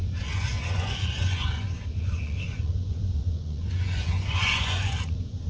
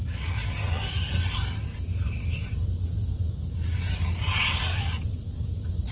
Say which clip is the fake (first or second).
first